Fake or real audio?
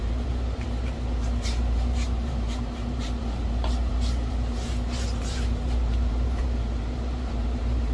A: fake